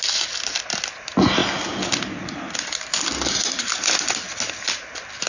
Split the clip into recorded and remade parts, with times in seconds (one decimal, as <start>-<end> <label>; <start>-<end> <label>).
0.0-5.3 recorded